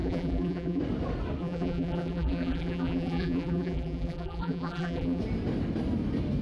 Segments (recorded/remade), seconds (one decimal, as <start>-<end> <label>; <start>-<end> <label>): 0.0-0.8 remade; 0.8-1.4 recorded; 1.4-5.2 remade; 5.2-6.4 recorded